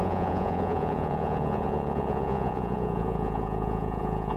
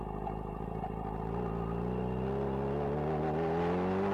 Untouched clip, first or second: second